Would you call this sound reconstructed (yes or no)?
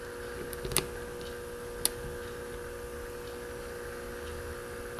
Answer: no